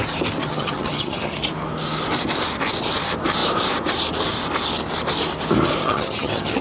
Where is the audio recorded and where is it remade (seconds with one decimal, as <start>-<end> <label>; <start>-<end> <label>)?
0.0-0.4 recorded; 0.4-1.4 remade; 1.4-5.8 recorded; 5.8-6.6 remade

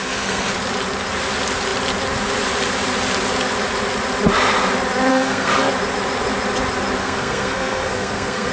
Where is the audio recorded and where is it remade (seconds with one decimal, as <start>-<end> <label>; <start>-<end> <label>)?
0.0-0.5 remade; 0.5-5.1 recorded; 5.1-5.7 remade; 5.7-7.0 recorded; 7.0-8.5 remade